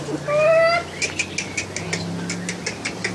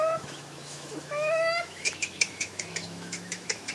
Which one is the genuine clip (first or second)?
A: first